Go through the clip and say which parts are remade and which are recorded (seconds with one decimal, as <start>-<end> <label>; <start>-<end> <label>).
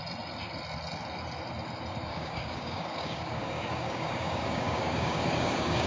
0.0-2.1 recorded; 2.1-5.9 remade